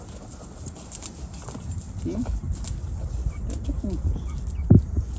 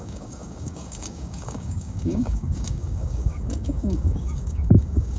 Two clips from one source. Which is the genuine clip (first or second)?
first